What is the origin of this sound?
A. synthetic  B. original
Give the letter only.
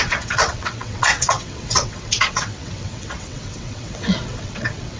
A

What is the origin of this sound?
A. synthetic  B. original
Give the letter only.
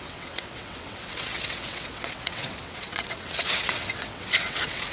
A